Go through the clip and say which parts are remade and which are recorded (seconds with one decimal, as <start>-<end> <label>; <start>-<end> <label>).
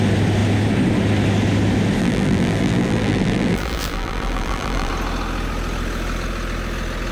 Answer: 0.0-2.0 recorded; 2.0-4.9 remade; 4.9-7.1 recorded